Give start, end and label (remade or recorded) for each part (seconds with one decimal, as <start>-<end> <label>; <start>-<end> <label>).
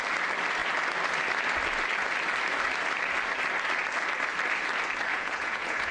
0.0-5.1 recorded; 5.1-5.9 remade